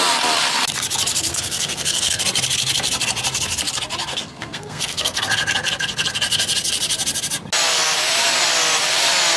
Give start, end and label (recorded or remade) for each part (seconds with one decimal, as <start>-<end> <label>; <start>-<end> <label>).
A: 0.0-1.3 recorded; 1.3-2.2 remade; 2.2-4.1 recorded; 4.1-5.3 remade; 5.3-9.4 recorded